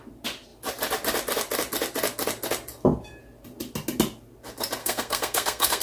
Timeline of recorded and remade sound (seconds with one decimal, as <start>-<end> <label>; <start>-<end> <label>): 0.0-4.8 recorded; 4.8-5.8 remade